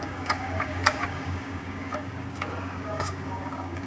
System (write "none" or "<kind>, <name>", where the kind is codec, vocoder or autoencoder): codec, DAC